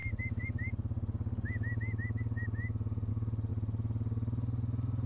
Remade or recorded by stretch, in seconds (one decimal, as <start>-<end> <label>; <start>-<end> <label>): 0.0-5.1 recorded

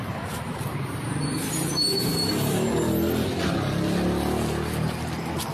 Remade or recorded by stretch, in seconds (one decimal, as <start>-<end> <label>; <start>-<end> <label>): 0.0-2.1 remade; 2.1-5.5 recorded

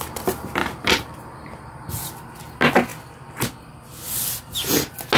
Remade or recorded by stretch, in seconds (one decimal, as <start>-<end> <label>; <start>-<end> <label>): 0.0-0.6 recorded; 0.6-2.1 remade; 2.1-5.2 recorded

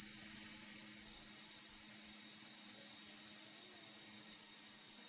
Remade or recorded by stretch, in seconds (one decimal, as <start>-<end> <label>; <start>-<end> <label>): 0.0-5.1 remade

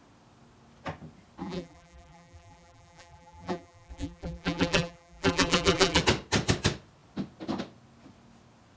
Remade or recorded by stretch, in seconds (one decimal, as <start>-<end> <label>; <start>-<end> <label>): 0.0-1.4 recorded; 1.4-6.0 remade; 6.0-8.8 recorded

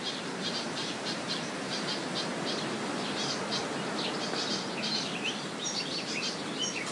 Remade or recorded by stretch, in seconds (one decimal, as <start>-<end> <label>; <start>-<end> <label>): 0.0-2.3 remade; 2.3-5.0 recorded; 5.0-6.9 remade

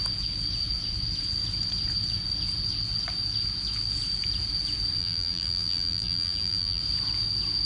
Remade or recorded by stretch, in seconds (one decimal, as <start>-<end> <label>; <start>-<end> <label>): 0.0-5.0 recorded; 5.0-6.8 remade; 6.8-7.6 recorded